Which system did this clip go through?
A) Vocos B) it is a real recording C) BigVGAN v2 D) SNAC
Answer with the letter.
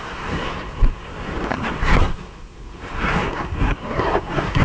D